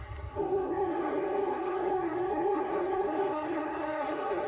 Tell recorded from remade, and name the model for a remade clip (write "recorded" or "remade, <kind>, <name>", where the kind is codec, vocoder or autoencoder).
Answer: remade, codec, SNAC